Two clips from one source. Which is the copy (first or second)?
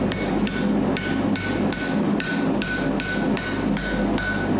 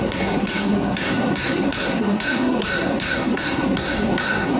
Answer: second